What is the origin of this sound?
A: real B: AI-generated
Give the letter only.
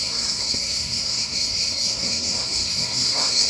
B